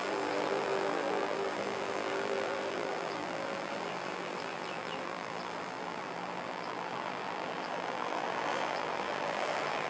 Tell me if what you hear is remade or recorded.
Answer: remade